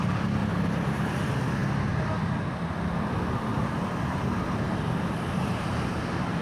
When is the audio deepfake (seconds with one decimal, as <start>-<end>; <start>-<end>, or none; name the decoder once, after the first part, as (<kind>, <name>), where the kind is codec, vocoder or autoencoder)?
0.4-1.1 (vocoder, BigVGAN v2); 3.5-6.0